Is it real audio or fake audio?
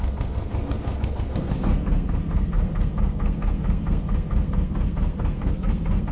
fake